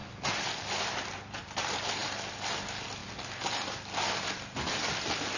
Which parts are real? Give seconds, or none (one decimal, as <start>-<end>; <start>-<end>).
0.0-1.4; 3.0-4.1